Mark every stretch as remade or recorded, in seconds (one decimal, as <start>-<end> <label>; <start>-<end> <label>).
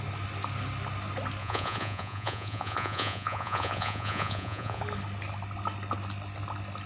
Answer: 0.0-1.4 recorded; 1.4-4.8 remade; 4.8-6.9 recorded